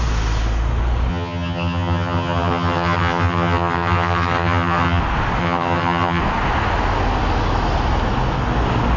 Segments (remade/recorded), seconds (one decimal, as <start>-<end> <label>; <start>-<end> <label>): 0.0-1.1 recorded; 1.1-5.0 remade; 5.0-5.4 recorded; 5.4-6.2 remade; 6.2-9.0 recorded